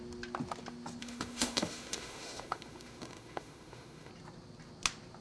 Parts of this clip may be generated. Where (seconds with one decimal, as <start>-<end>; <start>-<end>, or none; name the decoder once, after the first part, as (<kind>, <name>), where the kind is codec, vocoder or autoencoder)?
1.0-4.1 (autoencoder, DAC-VAE)

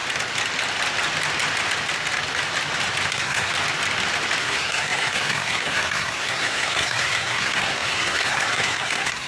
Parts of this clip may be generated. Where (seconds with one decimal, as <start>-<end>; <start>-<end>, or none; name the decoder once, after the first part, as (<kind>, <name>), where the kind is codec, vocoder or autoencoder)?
3.1-3.5 (codec, SNAC); 4.4-9.3

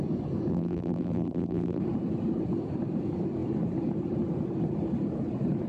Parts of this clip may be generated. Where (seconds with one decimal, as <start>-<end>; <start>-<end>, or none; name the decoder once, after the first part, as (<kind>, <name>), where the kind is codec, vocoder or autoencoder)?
0.5-1.8 (vocoder, BigVGAN v2)

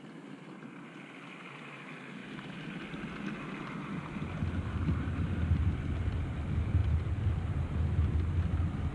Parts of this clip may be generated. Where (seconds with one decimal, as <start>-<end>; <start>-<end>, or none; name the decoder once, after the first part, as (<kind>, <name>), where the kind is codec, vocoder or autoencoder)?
none

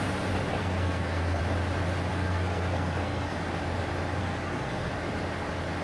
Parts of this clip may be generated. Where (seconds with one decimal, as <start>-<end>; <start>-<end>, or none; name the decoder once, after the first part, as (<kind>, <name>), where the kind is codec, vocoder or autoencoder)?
0.6-1.4 (codec, SNAC); 2.1-3.4; 4.2-4.9